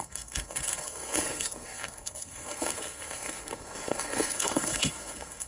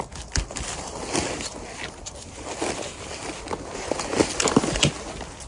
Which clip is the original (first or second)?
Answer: second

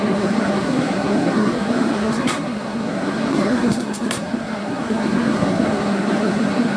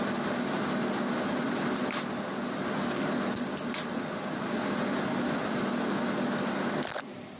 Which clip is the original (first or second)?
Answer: second